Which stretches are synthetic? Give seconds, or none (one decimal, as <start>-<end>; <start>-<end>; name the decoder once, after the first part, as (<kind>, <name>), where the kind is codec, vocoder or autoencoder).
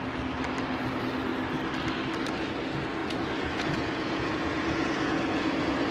3.0-5.9 (vocoder, Vocos)